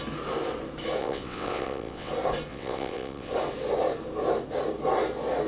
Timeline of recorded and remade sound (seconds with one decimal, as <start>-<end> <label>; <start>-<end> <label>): 0.0-1.0 recorded; 1.0-2.1 remade; 2.1-2.5 recorded; 2.5-3.3 remade; 3.3-5.5 recorded